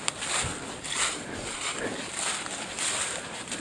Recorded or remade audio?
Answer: recorded